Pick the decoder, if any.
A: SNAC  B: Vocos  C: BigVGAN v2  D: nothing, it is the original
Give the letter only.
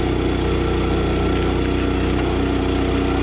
D